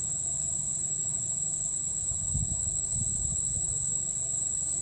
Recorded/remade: recorded